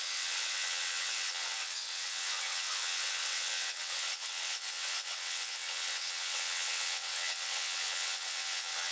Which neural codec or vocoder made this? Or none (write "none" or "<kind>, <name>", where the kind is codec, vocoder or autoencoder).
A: vocoder, WaveNeXt